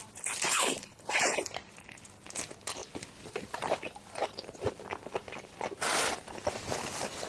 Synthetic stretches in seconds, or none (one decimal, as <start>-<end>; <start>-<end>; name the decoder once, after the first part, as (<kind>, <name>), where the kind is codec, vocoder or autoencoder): 0.5-1.4 (codec, HILCodec)